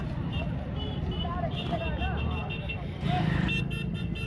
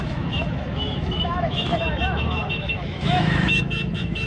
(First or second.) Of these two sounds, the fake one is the second